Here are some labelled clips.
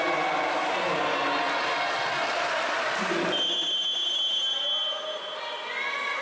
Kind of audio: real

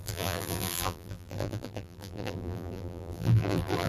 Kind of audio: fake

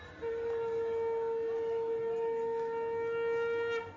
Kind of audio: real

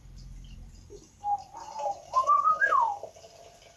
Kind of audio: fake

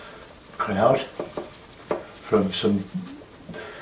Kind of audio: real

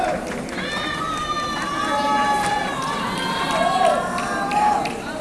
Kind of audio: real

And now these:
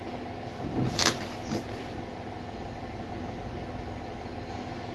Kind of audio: real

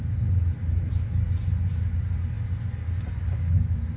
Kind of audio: real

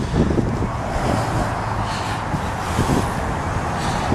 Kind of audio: real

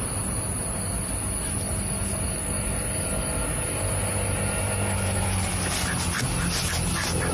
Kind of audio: real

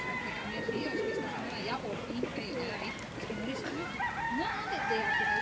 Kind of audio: real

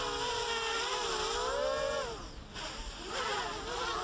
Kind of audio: real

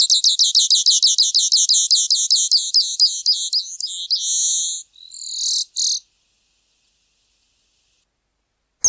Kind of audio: real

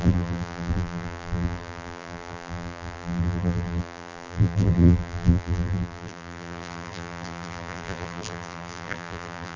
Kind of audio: fake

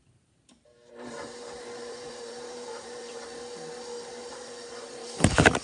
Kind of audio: fake